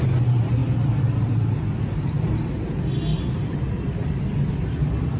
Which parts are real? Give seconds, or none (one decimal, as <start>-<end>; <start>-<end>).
0.0-3.1; 4.2-5.2